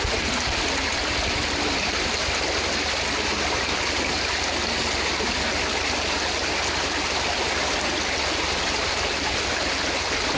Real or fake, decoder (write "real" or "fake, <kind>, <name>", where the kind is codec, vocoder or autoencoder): real